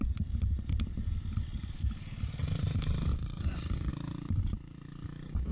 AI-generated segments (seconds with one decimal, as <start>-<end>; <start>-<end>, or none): 3.1-3.9